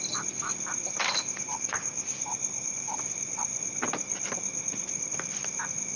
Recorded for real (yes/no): yes